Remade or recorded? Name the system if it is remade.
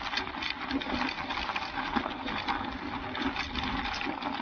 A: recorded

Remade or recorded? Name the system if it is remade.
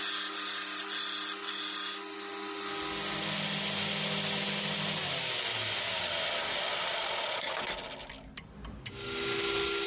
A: recorded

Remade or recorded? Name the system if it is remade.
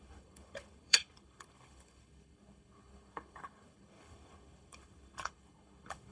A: remade, codec, HILCodec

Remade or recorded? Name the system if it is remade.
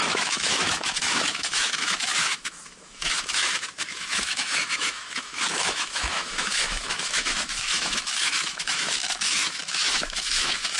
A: remade, autoencoder, DAC-VAE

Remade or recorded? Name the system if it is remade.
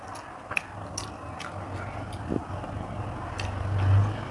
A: recorded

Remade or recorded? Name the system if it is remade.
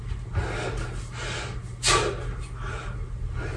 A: recorded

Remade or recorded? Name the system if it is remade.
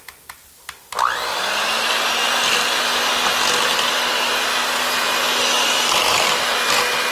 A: recorded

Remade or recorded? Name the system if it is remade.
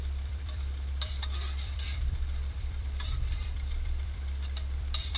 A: remade, vocoder, BigVGAN v2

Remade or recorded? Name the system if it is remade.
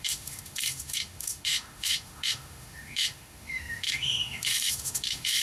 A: remade, autoencoder, DAC-VAE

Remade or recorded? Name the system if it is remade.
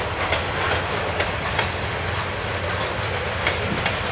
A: recorded